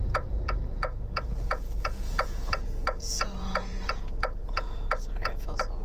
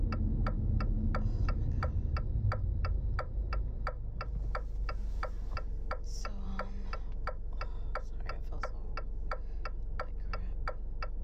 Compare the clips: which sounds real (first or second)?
second